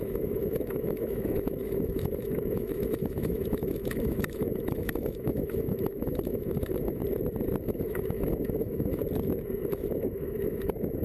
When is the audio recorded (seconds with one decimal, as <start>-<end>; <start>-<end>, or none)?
7.0-7.6; 9.0-9.6